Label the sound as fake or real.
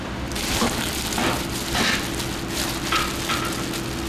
real